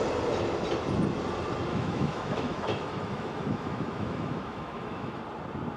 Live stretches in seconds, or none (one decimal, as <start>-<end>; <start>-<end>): 0.0-1.7; 5.2-5.8